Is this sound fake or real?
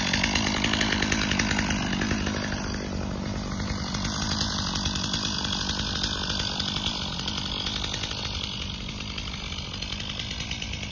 real